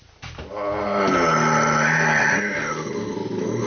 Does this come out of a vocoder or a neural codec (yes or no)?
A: no